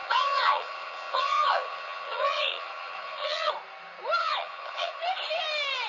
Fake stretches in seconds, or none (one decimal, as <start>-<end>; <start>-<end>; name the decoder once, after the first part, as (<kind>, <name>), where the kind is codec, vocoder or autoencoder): 0.0-3.5 (vocoder, HiFi-GAN); 4.2-5.0